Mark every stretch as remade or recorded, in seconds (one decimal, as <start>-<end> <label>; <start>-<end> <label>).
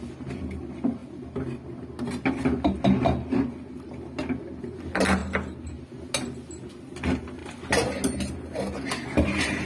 0.0-9.7 recorded